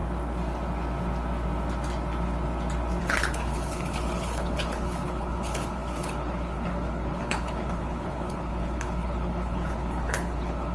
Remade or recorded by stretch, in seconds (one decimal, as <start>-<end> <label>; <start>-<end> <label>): 0.0-3.0 recorded; 3.0-10.7 remade